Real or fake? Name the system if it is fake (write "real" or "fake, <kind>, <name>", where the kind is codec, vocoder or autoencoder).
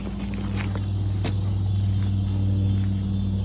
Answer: real